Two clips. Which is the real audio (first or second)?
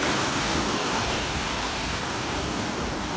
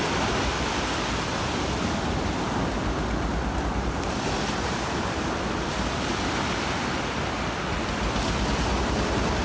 second